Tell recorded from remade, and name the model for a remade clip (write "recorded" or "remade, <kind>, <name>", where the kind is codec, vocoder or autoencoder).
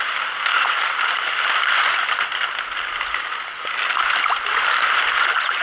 remade, vocoder, BigVGAN v2